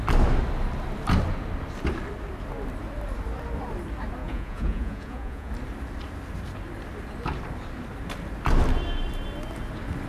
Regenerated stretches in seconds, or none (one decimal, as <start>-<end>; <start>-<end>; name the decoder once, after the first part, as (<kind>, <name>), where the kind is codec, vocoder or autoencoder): 4.2-5.5 (vocoder, Vocos)